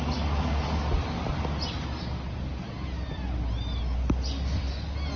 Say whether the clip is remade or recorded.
recorded